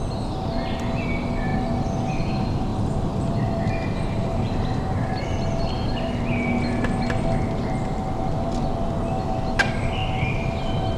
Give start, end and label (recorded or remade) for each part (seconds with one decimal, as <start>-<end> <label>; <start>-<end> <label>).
0.0-2.7 recorded; 2.7-6.2 remade; 6.2-11.0 recorded